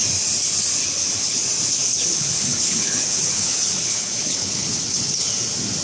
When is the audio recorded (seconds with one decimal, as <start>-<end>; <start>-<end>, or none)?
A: 0.0-0.8; 1.4-1.8; 5.3-5.8